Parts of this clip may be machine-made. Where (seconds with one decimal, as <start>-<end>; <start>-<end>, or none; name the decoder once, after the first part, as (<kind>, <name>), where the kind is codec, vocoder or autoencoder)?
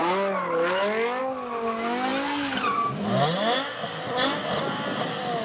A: none